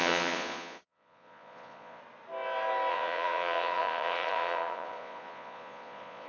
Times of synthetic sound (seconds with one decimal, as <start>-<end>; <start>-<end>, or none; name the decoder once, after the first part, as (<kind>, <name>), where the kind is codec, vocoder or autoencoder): 0.0-2.0 (vocoder, Vocos); 2.9-6.3